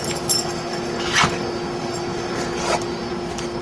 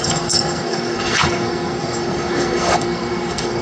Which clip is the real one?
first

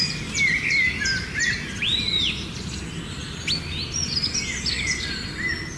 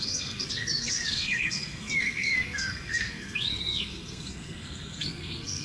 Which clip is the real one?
first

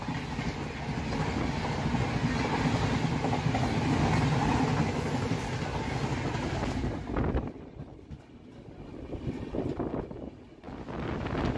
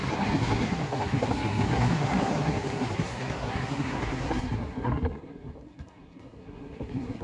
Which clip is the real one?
first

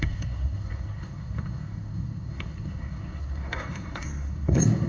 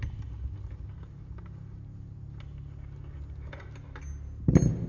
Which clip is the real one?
second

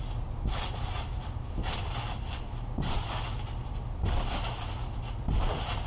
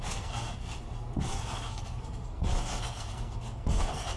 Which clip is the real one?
first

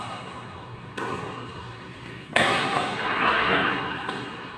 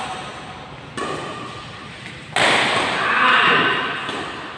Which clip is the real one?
second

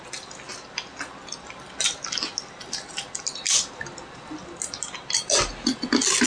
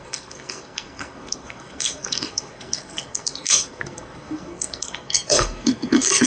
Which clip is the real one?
first